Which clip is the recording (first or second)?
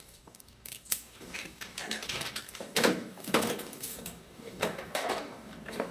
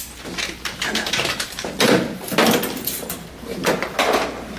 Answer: second